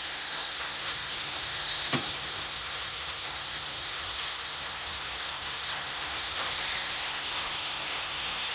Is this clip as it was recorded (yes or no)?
no